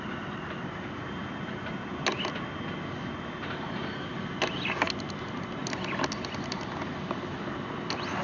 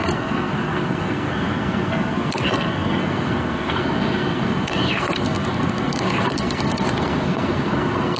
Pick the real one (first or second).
first